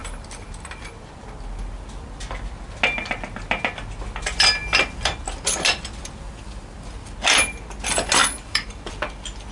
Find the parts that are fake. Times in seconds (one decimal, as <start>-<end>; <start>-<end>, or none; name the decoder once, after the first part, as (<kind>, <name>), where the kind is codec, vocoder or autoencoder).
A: 0.0-1.2 (vocoder, BigVGAN v2); 8.2-8.9